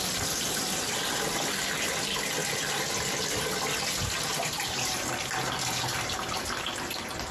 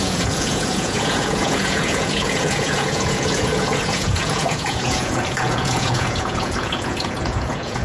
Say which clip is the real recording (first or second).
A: first